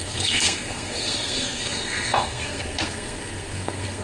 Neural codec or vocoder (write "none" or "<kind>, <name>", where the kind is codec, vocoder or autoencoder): codec, SNAC